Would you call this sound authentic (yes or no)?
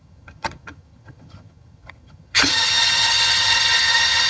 no